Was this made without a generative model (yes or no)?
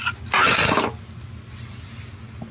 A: yes